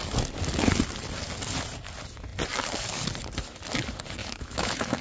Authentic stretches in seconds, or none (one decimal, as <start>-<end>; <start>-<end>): 0.0-4.2